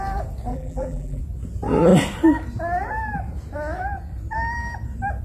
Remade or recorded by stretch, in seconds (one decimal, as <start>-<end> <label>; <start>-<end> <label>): 0.0-0.5 recorded; 0.5-1.2 remade; 1.2-5.2 recorded